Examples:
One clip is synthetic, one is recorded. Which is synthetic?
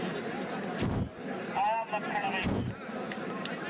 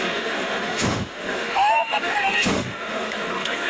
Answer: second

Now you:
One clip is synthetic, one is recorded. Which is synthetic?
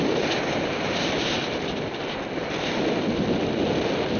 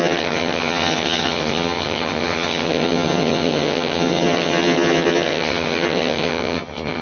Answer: second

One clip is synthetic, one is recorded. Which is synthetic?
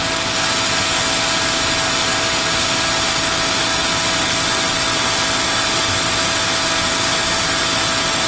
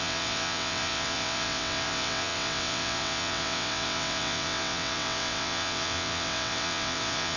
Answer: second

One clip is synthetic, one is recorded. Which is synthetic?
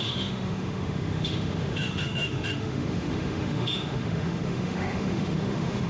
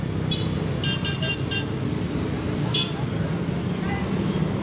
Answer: first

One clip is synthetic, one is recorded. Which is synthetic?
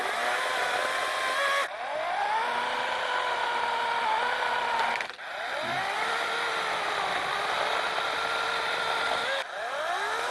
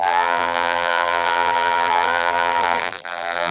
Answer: second